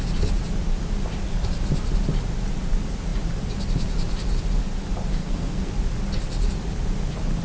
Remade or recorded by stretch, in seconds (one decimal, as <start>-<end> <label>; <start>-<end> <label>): 0.0-5.1 recorded; 5.1-5.7 remade; 5.7-7.4 recorded